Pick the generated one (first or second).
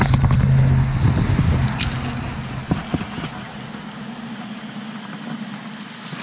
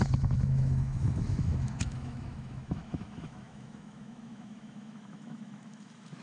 second